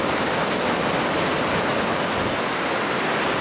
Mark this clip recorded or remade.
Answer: recorded